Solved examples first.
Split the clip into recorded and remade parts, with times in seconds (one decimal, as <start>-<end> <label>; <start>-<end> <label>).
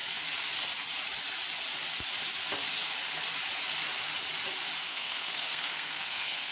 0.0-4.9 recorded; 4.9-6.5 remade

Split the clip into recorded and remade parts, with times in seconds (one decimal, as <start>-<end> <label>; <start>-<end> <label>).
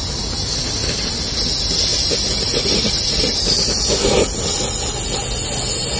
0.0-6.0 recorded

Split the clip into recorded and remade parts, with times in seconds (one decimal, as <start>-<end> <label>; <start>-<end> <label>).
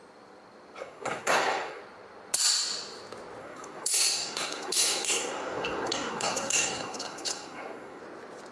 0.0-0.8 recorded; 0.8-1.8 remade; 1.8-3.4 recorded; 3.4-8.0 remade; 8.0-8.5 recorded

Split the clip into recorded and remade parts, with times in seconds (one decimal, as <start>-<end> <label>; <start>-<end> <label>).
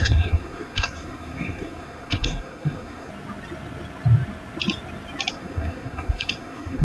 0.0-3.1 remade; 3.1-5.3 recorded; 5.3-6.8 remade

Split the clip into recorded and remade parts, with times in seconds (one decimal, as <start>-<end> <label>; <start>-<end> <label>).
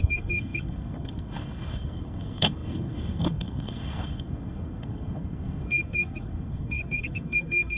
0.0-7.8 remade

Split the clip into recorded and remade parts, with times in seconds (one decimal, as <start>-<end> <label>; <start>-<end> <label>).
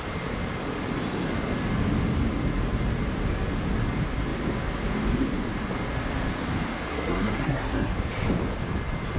0.0-6.9 recorded; 6.9-7.9 remade; 7.9-9.2 recorded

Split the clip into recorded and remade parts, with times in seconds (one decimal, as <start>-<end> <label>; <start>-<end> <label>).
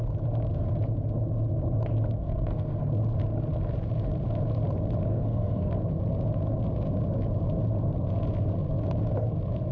0.0-2.2 recorded; 2.2-2.8 remade; 2.8-5.1 recorded; 5.1-5.7 remade; 5.7-9.7 recorded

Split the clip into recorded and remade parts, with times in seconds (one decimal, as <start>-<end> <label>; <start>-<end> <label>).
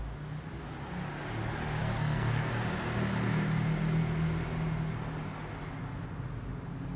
0.0-1.8 recorded; 1.8-2.5 remade; 2.5-7.0 recorded